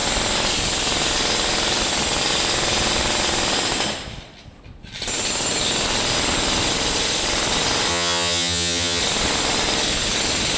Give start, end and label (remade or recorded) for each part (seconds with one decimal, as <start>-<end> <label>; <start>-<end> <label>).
0.0-7.9 recorded; 7.9-9.0 remade; 9.0-10.6 recorded